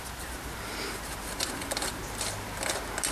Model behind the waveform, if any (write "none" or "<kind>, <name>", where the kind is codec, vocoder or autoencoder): none